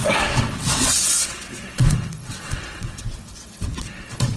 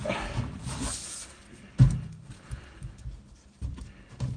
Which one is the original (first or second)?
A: second